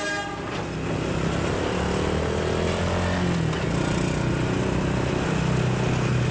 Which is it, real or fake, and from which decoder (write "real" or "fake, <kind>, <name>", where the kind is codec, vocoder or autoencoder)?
real